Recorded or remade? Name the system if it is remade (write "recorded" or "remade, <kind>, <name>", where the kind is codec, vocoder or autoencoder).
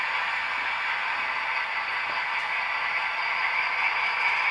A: recorded